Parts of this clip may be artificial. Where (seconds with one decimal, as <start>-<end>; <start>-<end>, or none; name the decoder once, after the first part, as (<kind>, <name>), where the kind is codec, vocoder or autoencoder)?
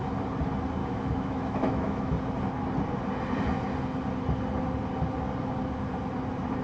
0.8-2.1 (autoencoder, DAC-VAE)